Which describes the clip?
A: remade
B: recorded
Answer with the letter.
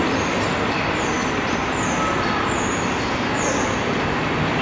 B